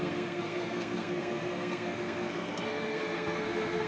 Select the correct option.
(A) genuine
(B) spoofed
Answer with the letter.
B